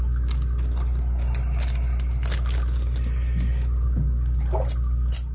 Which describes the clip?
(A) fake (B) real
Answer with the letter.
B